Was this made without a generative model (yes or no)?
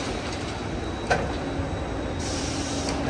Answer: yes